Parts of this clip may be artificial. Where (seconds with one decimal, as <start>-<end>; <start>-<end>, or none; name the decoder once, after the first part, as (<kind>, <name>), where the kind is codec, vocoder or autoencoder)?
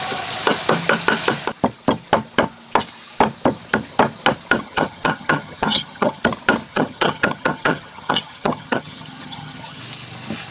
4.6-6.2 (vocoder, HiFi-GAN); 6.7-9.8